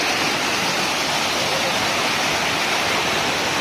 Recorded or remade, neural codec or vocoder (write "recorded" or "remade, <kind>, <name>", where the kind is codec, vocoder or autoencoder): recorded